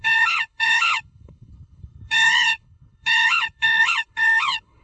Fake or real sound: fake